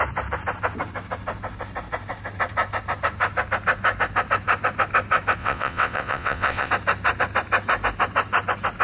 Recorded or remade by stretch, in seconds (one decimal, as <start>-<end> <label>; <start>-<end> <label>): 0.0-5.4 recorded; 5.4-6.7 remade; 6.7-8.8 recorded